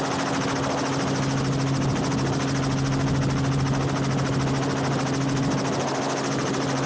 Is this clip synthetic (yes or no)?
no